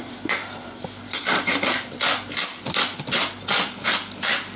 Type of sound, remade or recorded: recorded